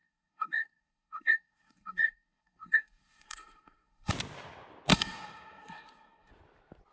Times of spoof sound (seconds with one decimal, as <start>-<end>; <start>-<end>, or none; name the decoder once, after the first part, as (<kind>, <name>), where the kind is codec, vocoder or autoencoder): 0.0-4.1 (codec, SNAC); 4.9-6.3